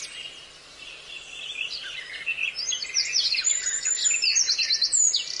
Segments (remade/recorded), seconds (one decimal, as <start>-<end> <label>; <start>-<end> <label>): 0.0-5.4 recorded